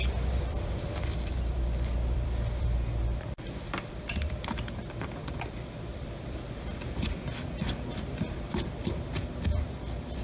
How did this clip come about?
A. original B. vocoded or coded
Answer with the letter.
B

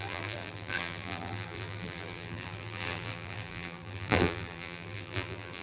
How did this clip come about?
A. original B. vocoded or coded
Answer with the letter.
B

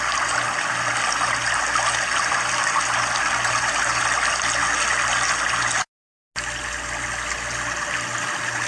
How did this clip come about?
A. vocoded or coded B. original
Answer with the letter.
B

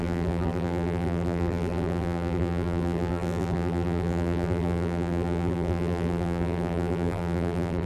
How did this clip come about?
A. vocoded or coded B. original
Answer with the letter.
A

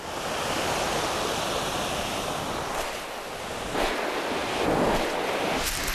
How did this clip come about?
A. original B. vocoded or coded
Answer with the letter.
A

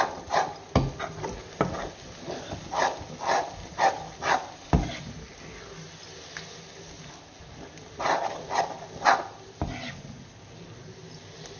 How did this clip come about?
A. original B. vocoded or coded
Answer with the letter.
A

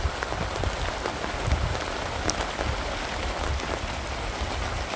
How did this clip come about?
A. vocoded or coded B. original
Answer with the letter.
B